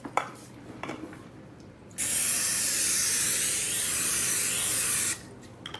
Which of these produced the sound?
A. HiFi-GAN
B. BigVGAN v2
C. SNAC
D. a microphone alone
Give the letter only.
B